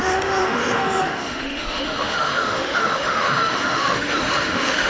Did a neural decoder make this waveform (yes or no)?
yes